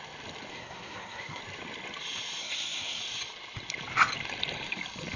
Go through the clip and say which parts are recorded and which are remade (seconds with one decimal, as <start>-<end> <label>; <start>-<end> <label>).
0.0-0.5 recorded; 0.5-1.4 remade; 1.4-2.4 recorded; 2.4-3.0 remade; 3.0-5.2 recorded